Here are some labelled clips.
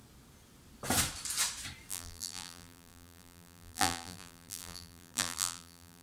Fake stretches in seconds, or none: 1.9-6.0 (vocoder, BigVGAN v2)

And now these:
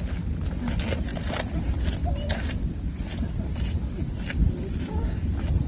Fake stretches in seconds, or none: none

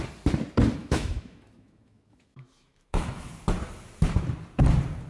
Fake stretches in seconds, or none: 0.8-3.3 (autoencoder, DAC-VAE)

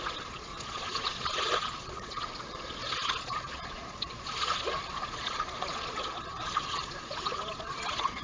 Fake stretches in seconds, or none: 0.0-8.2 (vocoder, Vocos)

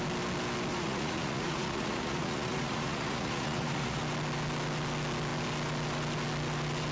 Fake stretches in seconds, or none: 0.7-4.0 (vocoder, Vocos)

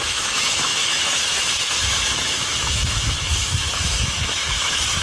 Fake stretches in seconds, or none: 0.0-5.0 (autoencoder, DAC-VAE)

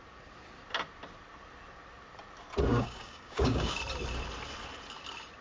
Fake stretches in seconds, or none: 2.7-3.8 (codec, DAC)

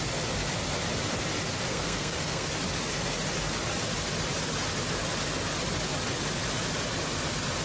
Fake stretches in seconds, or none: 1.7-2.5 (codec, SNAC)